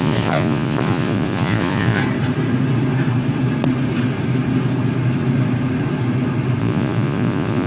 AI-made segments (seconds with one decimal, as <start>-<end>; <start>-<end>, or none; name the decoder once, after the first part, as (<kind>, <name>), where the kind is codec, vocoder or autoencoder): 0.0-2.0 (vocoder, Vocos); 6.6-7.7